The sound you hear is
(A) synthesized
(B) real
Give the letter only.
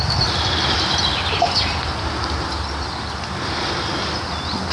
B